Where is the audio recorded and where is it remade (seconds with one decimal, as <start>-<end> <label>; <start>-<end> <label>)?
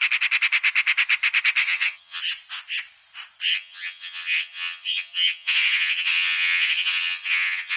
0.0-1.6 recorded; 1.6-2.2 remade; 2.2-3.5 recorded; 3.5-7.8 remade